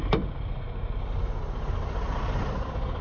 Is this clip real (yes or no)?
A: yes